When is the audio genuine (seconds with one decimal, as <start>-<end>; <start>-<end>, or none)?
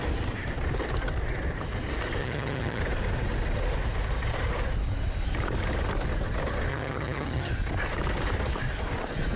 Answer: 0.0-2.2; 2.8-6.7; 7.5-9.4